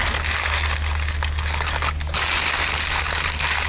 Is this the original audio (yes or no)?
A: yes